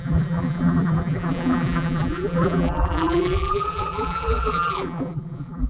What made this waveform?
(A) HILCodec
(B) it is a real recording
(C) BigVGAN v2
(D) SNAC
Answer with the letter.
C